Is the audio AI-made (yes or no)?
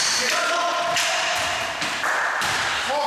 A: yes